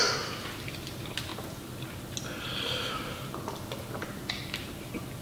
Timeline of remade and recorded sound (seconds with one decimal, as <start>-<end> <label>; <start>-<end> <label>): 0.0-5.2 recorded